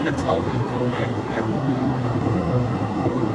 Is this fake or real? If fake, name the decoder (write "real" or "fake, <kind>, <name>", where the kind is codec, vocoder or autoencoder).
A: fake, codec, SNAC